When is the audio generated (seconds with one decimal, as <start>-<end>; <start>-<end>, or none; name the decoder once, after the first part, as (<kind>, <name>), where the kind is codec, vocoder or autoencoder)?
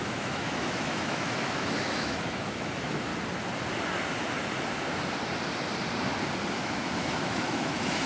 0.0-3.1 (autoencoder, DAC-VAE); 6.5-8.1